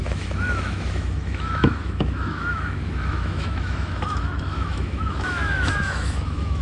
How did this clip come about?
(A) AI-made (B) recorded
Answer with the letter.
A